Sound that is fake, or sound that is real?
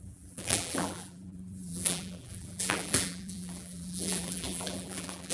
fake